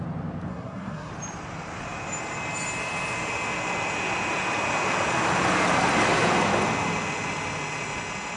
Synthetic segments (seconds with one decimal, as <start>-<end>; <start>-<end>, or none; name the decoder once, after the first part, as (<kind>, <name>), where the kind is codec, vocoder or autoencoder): 0.5-1.1 (codec, SNAC)